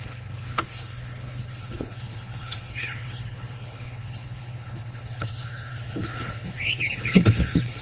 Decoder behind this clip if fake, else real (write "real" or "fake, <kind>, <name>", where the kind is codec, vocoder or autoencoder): fake, codec, HILCodec